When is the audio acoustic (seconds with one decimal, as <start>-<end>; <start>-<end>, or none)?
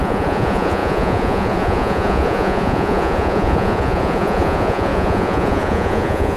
none